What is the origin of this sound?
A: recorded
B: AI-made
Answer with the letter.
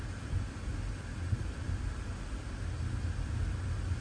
A